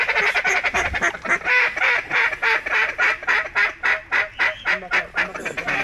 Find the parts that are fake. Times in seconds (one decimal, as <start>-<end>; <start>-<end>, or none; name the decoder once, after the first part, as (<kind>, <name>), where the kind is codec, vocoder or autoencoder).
none